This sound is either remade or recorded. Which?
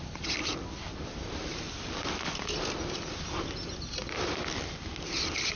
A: recorded